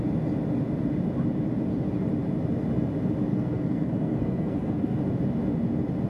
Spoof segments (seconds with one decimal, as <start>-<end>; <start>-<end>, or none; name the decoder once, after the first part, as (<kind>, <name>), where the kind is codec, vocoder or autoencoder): 3.3-5.0 (codec, SNAC)